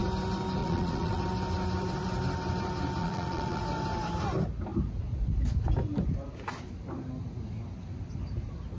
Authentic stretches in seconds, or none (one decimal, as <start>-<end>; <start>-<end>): 0.0-0.6; 1.2-3.0; 3.6-8.8